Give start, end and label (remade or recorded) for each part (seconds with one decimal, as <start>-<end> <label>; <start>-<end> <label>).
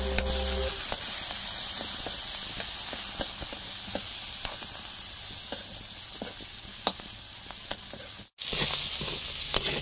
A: 0.0-9.8 recorded